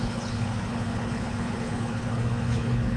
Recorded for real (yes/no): no